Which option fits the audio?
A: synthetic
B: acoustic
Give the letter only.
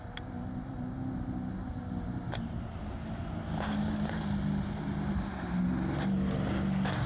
B